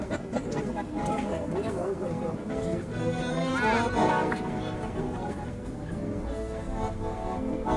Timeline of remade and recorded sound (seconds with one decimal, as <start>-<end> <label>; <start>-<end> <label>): 0.0-3.5 remade; 3.5-4.1 recorded; 4.1-7.8 remade